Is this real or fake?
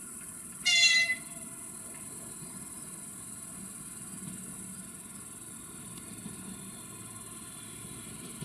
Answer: real